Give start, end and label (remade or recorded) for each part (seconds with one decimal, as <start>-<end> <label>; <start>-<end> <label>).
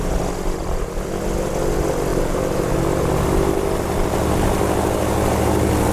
0.0-2.1 recorded; 2.1-2.7 remade; 2.7-5.9 recorded